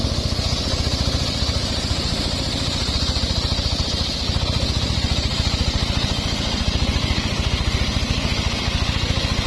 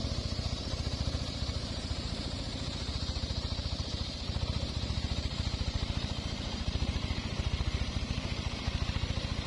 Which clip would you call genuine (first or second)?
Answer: first